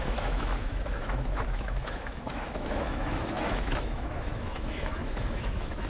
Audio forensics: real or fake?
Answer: fake